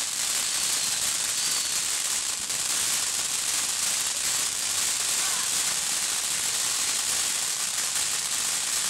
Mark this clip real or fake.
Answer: real